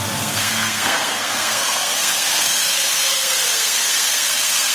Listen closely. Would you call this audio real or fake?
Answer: fake